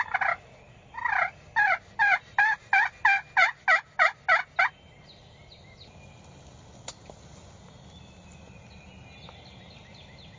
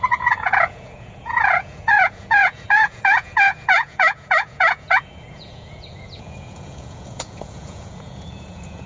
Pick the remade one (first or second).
second